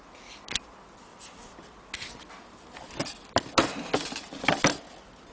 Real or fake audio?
real